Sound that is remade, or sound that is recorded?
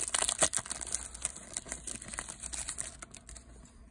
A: recorded